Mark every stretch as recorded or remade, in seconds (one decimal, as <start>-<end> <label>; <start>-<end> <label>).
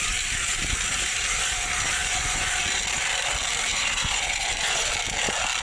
0.0-2.0 recorded; 2.0-2.6 remade; 2.6-3.7 recorded; 3.7-4.9 remade; 4.9-5.6 recorded